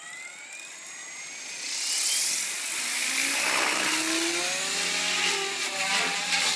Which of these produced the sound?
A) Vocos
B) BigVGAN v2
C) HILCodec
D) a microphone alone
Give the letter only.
D